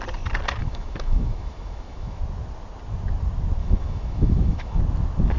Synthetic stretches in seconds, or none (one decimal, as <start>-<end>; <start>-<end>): 0.6-2.2; 3.6-4.8